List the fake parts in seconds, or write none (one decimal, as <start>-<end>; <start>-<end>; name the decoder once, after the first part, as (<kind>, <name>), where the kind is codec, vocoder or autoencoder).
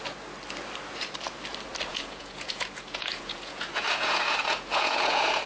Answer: 1.9-5.5 (vocoder, Vocos)